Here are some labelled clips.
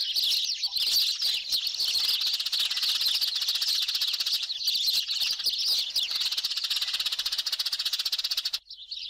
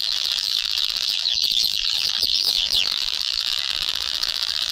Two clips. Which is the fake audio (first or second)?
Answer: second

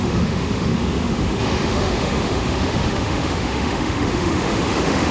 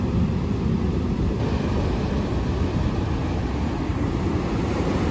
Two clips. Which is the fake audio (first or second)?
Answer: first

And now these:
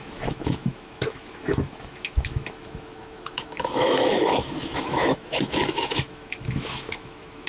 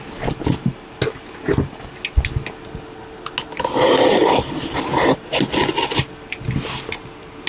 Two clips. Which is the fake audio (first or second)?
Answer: first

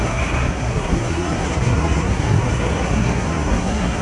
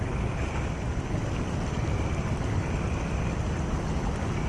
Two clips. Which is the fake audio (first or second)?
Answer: first